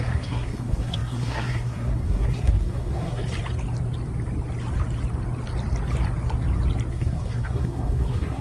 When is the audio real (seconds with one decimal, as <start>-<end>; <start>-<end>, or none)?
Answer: 3.2-6.9